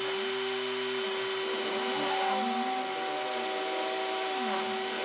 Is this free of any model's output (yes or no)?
yes